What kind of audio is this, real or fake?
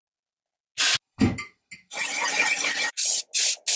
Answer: real